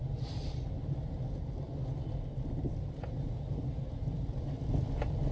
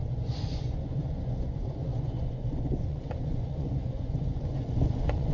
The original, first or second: first